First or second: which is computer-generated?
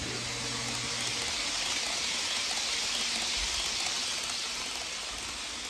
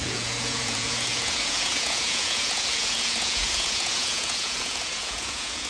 second